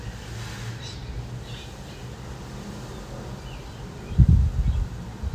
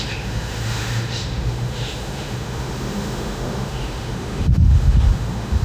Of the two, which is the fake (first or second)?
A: second